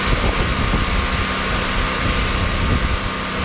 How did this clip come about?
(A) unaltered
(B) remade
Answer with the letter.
A